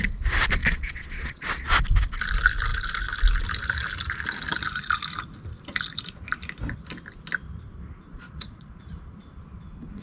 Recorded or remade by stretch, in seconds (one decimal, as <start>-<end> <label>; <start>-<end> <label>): 0.0-0.6 recorded; 0.6-1.8 remade; 1.8-8.1 recorded; 8.1-8.7 remade; 8.7-10.0 recorded